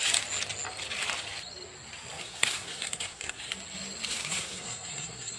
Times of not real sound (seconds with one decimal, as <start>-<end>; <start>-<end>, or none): 2.2-3.5; 4.1-5.4